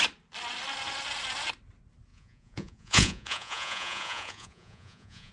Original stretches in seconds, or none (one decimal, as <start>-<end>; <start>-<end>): 0.0-2.1